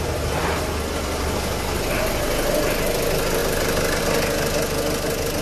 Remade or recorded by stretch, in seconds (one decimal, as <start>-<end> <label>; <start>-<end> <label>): 0.0-5.4 recorded